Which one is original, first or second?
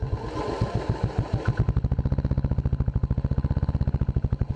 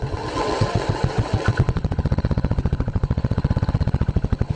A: first